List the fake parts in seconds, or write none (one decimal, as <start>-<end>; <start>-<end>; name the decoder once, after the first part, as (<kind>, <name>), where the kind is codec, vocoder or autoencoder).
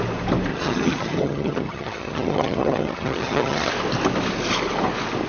0.5-3.7 (vocoder, HiFi-GAN)